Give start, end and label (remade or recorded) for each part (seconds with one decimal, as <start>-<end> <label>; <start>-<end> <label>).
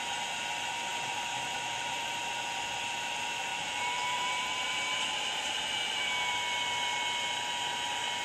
0.0-0.9 recorded; 0.9-2.2 remade; 2.2-3.5 recorded; 3.5-5.5 remade; 5.5-8.2 recorded